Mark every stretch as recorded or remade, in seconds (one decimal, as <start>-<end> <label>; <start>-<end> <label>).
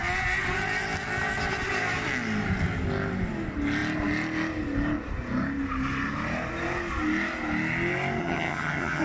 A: 0.0-8.2 recorded; 8.2-9.0 remade